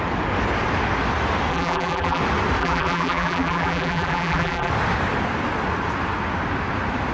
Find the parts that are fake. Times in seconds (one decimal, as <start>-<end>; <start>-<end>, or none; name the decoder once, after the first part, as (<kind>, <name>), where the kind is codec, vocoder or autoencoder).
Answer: 1.5-2.2 (vocoder, BigVGAN v2); 2.6-4.7